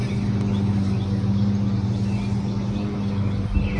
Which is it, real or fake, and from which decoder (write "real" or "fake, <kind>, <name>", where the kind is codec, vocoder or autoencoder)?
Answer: real